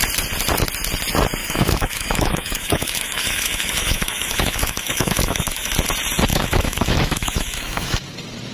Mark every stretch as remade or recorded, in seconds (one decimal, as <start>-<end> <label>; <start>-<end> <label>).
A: 0.0-1.4 recorded; 1.4-5.7 remade; 5.7-6.3 recorded; 6.3-8.0 remade; 8.0-8.5 recorded